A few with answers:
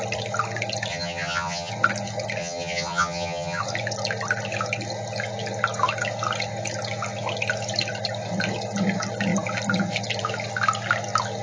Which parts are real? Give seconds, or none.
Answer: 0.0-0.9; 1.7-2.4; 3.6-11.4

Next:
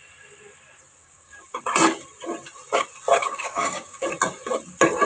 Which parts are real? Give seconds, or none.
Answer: 0.0-1.0; 1.6-3.2; 4.1-5.1

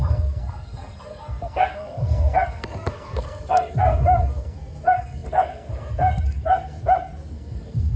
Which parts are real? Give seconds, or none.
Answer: 6.8-7.3

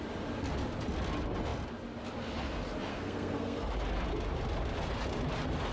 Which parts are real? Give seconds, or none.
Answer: 0.0-2.9; 3.7-5.7

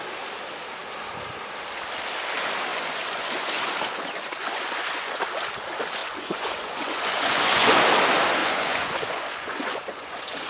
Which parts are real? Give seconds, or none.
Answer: 0.0-2.7; 5.2-6.0; 7.8-8.4